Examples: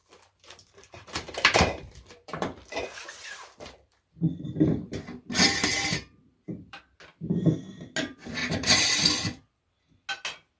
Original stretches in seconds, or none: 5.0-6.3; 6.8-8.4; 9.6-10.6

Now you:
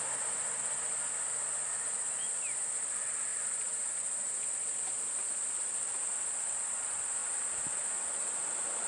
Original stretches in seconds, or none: 0.0-3.3; 4.3-7.2; 7.9-8.9

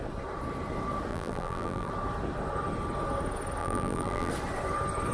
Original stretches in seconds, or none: 0.0-1.1; 1.9-3.6; 4.3-5.1

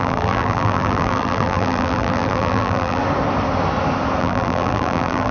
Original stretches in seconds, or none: 3.0-4.2

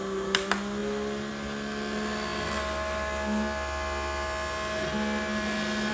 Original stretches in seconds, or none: 0.0-5.9

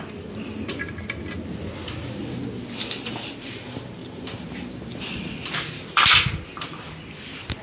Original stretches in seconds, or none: 0.0-4.0; 6.1-7.6

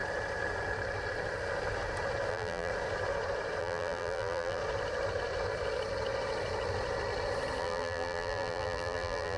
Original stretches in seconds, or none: 0.0-2.3; 2.7-3.6; 4.6-7.6

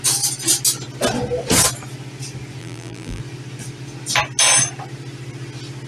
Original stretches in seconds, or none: 0.0-2.6; 3.2-5.9